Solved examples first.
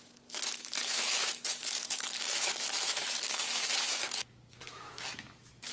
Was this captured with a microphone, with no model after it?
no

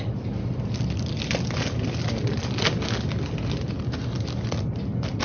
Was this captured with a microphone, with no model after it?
yes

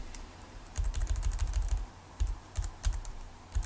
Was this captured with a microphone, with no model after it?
no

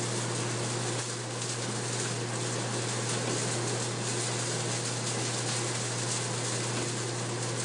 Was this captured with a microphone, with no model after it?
yes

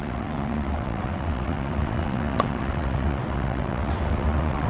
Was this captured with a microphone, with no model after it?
no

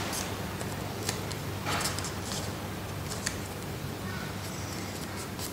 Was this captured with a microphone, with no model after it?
no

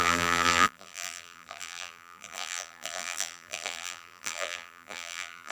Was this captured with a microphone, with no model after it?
no